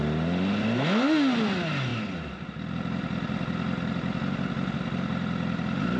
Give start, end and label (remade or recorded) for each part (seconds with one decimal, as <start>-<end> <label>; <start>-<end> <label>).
0.0-6.0 recorded